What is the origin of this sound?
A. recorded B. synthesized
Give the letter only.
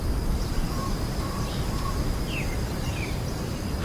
A